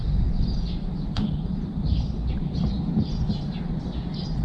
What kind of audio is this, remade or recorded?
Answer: recorded